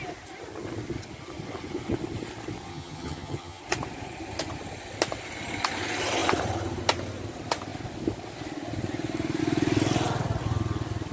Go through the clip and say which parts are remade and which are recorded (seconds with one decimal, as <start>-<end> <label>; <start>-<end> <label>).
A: 0.0-2.7 recorded; 2.7-3.6 remade; 3.6-11.1 recorded